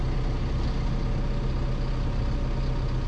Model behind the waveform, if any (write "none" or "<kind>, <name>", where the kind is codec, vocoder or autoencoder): none